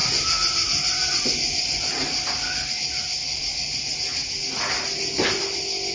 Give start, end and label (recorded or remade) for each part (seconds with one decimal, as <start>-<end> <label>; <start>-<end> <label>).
0.0-5.9 recorded